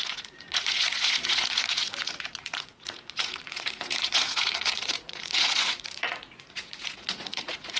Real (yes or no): no